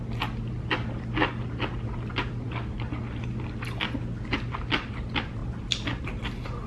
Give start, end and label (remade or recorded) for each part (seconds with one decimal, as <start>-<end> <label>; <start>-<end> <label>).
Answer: 0.0-6.7 recorded